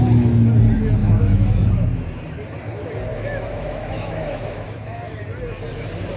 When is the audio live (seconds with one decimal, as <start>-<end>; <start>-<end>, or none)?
0.0-1.0; 1.7-3.1; 5.2-6.2